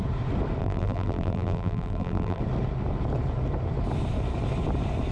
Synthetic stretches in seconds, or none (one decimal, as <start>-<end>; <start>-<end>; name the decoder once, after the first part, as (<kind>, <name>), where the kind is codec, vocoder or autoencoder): 0.6-2.4 (vocoder, BigVGAN v2)